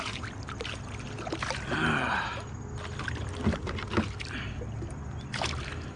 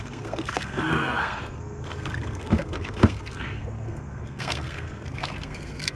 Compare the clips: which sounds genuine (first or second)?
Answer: first